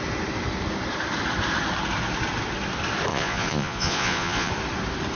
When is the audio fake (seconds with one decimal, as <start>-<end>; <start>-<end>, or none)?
3.1-4.5